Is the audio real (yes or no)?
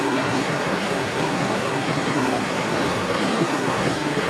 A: no